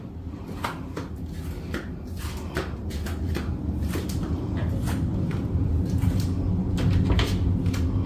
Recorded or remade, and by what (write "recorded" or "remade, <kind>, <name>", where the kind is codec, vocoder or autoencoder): recorded